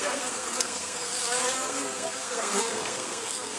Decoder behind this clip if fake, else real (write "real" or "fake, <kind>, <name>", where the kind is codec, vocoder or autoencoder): fake, codec, SNAC